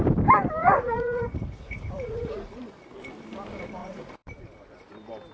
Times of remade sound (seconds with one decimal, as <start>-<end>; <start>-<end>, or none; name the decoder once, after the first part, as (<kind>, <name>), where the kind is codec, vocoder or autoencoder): 0.6-2.8 (vocoder, Vocos); 3.8-4.3